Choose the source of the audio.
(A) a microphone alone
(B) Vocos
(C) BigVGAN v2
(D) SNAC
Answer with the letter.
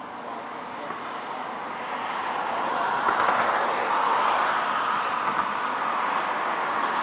A